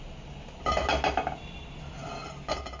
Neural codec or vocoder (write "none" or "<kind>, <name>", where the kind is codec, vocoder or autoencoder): none